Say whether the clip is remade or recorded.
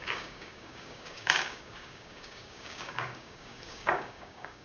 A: remade